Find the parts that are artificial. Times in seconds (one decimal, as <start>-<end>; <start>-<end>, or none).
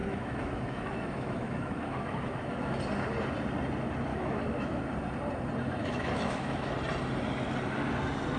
0.0-2.8; 4.1-4.8; 5.8-6.7